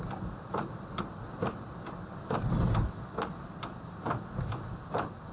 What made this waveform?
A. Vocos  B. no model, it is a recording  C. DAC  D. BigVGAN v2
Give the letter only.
B